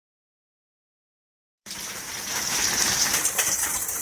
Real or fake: fake